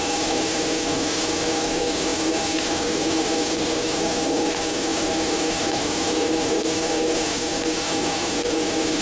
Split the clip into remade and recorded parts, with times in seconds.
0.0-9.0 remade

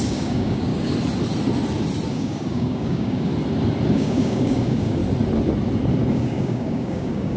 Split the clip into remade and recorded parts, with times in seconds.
0.0-0.7 remade; 0.7-2.1 recorded; 2.1-3.3 remade; 3.3-3.9 recorded; 3.9-5.0 remade; 5.0-6.1 recorded; 6.1-7.4 remade